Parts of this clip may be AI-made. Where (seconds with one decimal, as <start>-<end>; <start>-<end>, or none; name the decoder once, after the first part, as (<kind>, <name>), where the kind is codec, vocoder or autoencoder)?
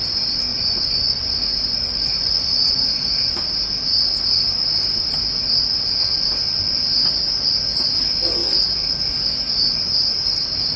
0.5-3.3 (vocoder, Vocos)